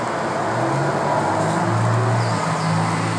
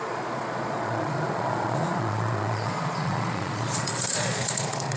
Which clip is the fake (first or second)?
second